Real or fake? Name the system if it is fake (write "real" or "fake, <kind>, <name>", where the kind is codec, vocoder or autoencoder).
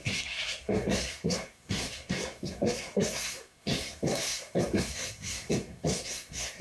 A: fake, codec, SNAC